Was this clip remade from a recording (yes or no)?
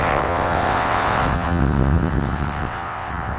yes